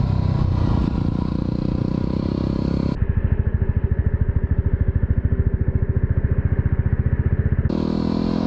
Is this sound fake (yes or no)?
no